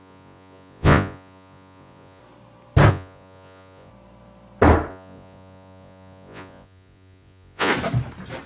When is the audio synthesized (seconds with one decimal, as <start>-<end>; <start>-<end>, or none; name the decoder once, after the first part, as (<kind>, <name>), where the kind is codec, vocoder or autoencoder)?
0.0-2.2 (vocoder, Vocos); 2.9-3.9; 4.9-7.7